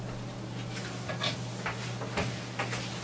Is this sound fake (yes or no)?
no